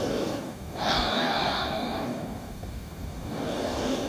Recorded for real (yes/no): no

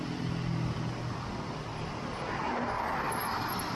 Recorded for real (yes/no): yes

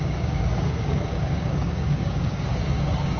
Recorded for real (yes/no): no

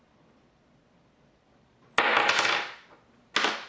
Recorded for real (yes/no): yes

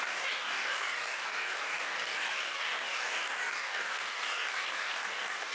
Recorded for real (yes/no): no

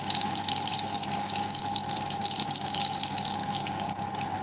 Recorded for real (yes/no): no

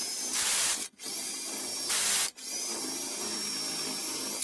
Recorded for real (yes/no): yes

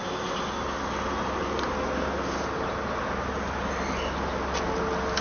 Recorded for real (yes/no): yes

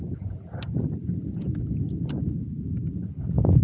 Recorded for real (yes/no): yes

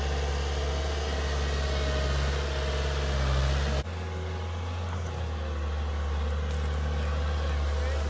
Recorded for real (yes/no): yes